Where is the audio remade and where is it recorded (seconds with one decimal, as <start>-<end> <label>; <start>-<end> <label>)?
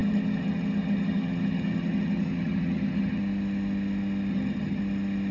0.0-3.2 remade; 3.2-4.3 recorded; 4.3-4.8 remade; 4.8-5.3 recorded